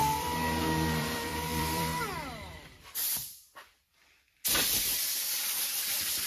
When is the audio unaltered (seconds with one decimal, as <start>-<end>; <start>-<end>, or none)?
1.9-2.5; 3.2-5.3